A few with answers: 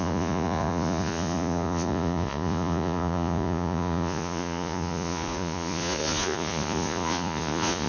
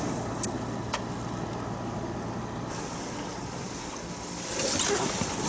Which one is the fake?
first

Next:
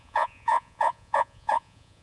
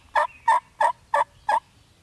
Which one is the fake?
first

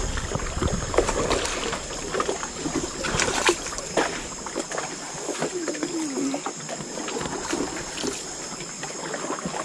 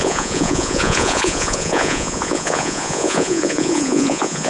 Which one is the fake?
second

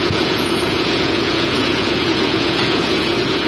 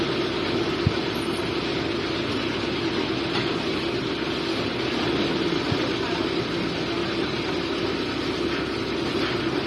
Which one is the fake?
first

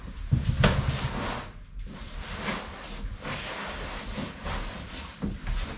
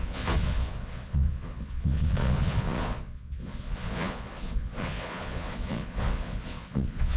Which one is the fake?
second